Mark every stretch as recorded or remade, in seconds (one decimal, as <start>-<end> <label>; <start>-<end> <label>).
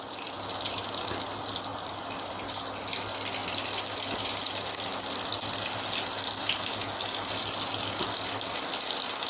0.0-1.7 recorded; 1.7-2.5 remade; 2.5-9.3 recorded